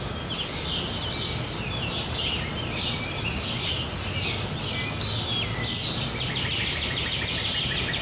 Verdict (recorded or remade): recorded